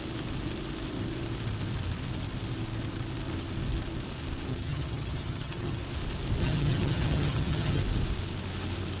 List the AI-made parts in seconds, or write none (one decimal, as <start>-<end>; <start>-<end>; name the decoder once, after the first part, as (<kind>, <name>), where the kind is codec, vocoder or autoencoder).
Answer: 4.5-5.8 (vocoder, HiFi-GAN); 6.4-7.8